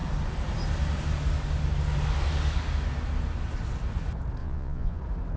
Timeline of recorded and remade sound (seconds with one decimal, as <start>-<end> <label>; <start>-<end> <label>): 0.0-4.4 recorded; 4.4-5.0 remade; 5.0-5.4 recorded